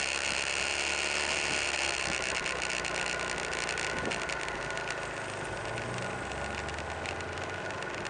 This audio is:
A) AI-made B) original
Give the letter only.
B